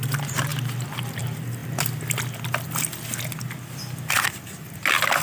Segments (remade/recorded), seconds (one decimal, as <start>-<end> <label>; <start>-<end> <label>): 0.0-5.2 recorded

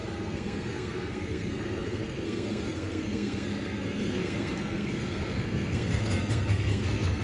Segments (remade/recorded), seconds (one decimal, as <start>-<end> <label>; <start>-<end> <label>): 0.0-7.2 remade

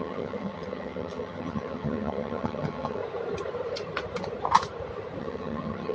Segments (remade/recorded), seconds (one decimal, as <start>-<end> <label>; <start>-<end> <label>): 0.0-3.0 remade; 3.0-5.2 recorded; 5.2-5.9 remade